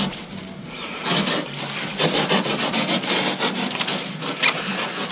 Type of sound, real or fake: real